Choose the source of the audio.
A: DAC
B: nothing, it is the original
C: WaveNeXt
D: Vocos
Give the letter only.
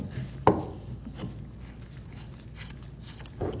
B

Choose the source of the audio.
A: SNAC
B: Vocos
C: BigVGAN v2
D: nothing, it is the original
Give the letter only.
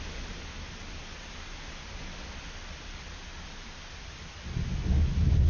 D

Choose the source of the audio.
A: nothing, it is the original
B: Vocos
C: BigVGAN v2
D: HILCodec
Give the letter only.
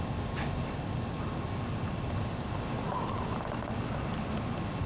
A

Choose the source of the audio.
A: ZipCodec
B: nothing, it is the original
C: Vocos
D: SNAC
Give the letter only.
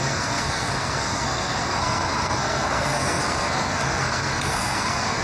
D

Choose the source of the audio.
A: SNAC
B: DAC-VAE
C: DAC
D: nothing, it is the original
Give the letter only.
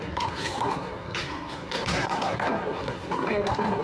A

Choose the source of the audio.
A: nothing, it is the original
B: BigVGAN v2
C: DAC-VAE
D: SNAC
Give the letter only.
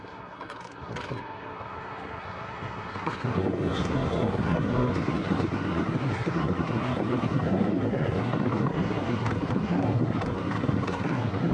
D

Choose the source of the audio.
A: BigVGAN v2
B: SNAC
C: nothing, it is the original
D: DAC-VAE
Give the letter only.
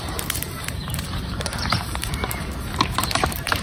A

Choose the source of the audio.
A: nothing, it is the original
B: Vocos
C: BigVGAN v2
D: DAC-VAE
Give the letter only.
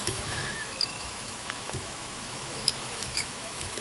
D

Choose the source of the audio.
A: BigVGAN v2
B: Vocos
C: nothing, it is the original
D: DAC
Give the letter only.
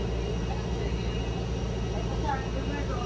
C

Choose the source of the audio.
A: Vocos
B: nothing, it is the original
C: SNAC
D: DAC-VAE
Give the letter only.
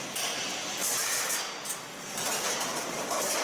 B